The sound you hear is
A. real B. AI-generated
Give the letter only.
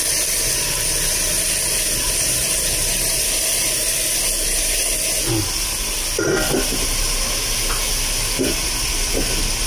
A